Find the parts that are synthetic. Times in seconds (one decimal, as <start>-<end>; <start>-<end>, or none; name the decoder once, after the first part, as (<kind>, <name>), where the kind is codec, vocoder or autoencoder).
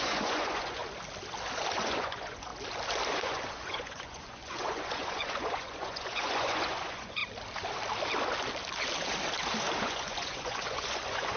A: 0.0-0.8 (vocoder, Vocos); 1.8-2.5; 3.1-7.2; 9.8-11.4